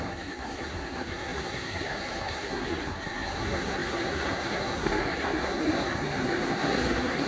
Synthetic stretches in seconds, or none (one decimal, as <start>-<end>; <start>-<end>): 0.0-7.3